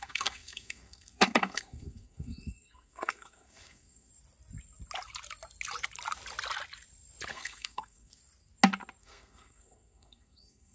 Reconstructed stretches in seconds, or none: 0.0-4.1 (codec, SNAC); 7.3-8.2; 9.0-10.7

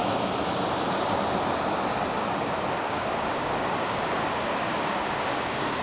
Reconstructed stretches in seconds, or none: 2.9-5.8 (codec, DAC)